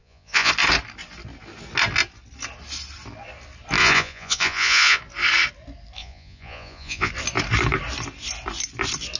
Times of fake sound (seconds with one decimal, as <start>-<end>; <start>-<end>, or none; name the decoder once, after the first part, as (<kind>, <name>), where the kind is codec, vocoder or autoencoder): 0.0-0.5 (vocoder, Vocos); 3.8-5.0; 6.0-7.1